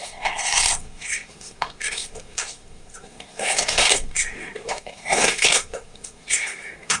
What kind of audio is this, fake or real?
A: fake